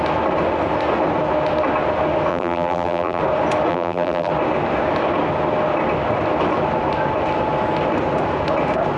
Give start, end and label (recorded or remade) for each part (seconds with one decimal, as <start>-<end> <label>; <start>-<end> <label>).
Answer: 0.0-2.3 recorded; 2.3-3.2 remade; 3.2-3.7 recorded; 3.7-4.3 remade; 4.3-9.0 recorded